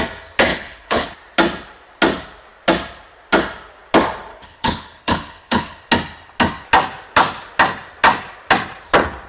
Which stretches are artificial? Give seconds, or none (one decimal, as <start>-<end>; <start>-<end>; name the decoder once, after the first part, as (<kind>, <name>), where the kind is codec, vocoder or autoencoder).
0.5-1.1 (codec, HILCodec); 4.3-5.8